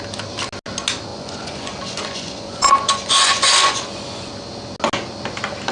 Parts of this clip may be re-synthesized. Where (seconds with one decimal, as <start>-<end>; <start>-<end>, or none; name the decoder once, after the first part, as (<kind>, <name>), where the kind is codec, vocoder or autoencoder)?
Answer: 1.1-4.3 (vocoder, Vocos)